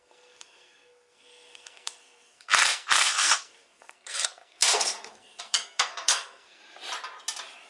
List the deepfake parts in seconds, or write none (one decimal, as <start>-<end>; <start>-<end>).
0.0-6.6

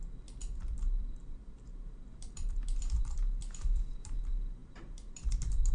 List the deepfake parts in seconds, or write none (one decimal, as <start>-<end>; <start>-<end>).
0.4-3.8; 4.6-5.7

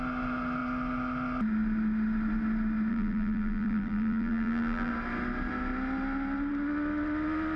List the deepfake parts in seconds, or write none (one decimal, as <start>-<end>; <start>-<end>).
2.9-4.9

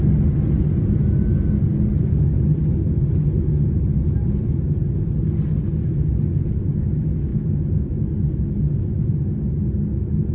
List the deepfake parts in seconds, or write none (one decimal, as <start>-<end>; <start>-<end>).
none